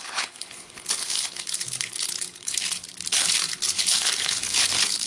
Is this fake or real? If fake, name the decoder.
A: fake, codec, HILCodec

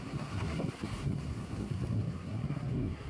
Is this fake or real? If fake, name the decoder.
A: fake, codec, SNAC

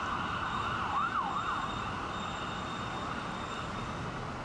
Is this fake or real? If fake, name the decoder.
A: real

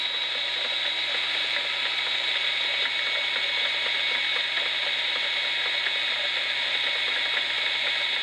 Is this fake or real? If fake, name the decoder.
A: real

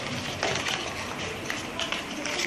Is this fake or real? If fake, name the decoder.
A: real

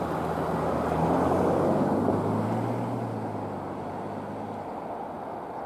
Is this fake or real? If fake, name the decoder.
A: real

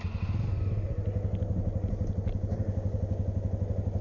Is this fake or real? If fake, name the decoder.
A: real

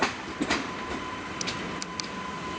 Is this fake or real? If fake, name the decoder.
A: real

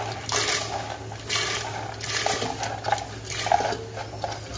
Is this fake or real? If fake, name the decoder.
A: real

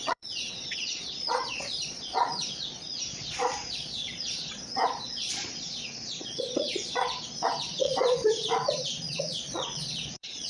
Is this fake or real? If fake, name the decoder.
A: fake, vocoder, Vocos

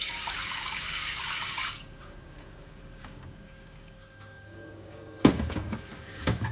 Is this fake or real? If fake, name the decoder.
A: fake, codec, DAC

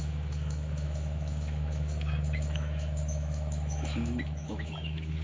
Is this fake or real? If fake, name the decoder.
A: fake, autoencoder, DAC-VAE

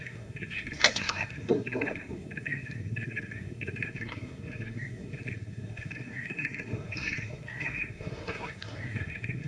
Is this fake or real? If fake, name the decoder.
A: fake, codec, SNAC